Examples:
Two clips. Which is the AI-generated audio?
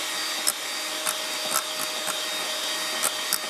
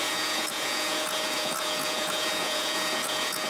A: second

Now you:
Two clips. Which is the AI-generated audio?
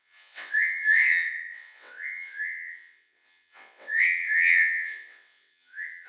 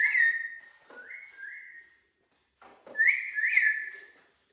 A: first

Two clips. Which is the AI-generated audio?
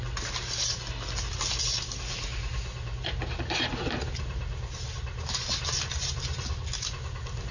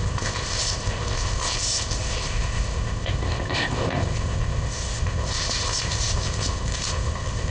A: second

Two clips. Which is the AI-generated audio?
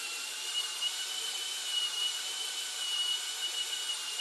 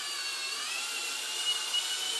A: first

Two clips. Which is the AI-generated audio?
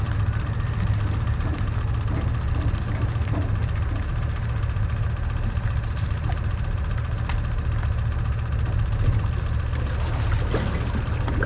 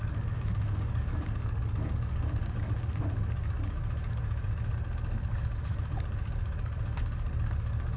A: second